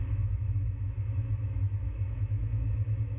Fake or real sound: fake